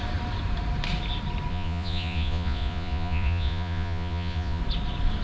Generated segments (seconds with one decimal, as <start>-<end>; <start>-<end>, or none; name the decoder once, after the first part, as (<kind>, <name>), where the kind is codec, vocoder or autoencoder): 1.5-4.6 (vocoder, Vocos)